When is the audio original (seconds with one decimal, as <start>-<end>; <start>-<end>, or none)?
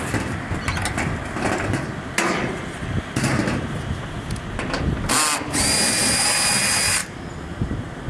0.0-8.1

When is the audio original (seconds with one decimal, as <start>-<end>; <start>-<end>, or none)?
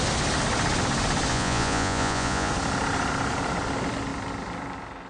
0.0-1.3; 2.5-5.1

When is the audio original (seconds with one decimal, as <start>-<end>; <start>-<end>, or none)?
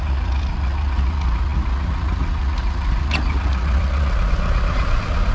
none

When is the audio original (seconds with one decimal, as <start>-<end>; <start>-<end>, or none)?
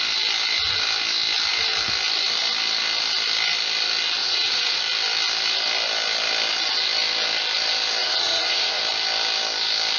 0.0-4.2; 4.8-8.0; 8.8-10.0